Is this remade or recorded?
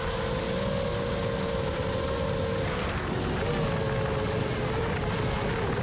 recorded